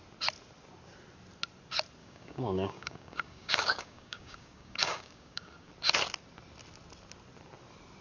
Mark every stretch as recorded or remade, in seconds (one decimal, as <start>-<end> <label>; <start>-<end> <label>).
0.0-2.0 recorded; 2.0-5.7 remade; 5.7-8.0 recorded